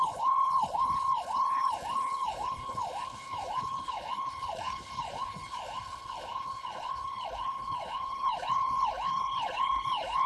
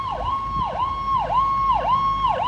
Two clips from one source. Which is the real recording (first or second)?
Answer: second